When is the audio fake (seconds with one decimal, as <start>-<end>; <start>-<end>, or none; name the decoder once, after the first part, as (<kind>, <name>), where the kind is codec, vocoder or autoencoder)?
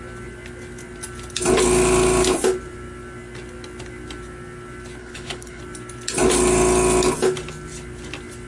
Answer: 5.0-5.6 (codec, HILCodec)